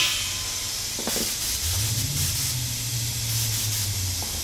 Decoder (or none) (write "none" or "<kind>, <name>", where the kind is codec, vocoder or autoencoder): none